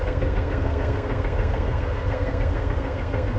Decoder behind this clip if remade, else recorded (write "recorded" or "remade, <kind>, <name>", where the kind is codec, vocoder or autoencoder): remade, codec, SNAC